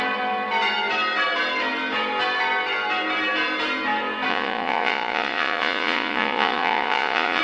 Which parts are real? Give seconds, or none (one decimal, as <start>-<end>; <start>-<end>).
0.0-4.3